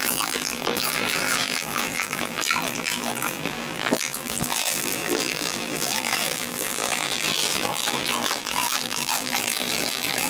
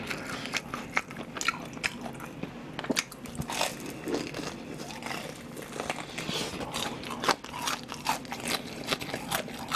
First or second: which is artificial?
first